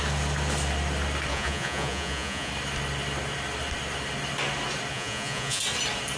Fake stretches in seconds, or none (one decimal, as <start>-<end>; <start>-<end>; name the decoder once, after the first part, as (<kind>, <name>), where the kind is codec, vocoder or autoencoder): 1.3-2.5 (vocoder, Vocos); 4.9-5.6

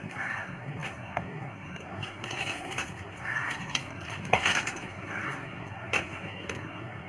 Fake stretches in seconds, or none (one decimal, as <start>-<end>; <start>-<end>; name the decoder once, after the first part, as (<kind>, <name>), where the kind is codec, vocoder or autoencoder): 0.0-7.1 (codec, SNAC)